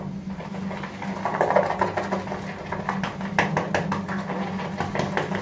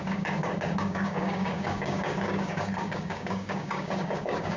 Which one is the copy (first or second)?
second